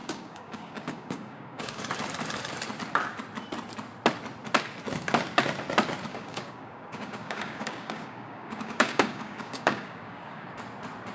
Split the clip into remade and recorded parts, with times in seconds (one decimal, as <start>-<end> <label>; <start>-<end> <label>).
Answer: 0.0-1.8 remade; 1.8-6.1 recorded; 6.1-10.5 remade; 10.5-11.1 recorded